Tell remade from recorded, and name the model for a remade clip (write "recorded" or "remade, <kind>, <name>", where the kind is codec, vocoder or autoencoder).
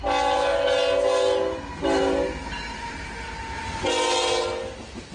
recorded